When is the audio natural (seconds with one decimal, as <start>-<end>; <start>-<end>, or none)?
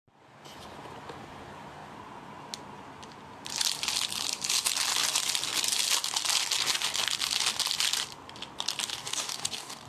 0.0-8.9